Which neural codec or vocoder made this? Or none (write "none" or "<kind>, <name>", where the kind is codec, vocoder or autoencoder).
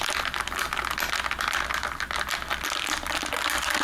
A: none